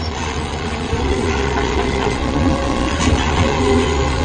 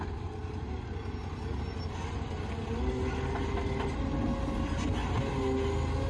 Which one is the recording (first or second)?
second